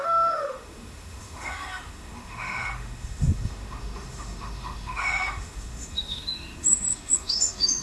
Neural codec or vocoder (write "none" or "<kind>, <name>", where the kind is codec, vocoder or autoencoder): autoencoder, DAC-VAE